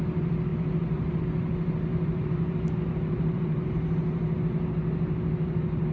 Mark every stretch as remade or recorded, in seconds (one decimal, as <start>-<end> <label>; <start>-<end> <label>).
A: 0.0-0.5 recorded; 0.5-1.2 remade; 1.2-1.9 recorded; 1.9-4.0 remade; 4.0-5.9 recorded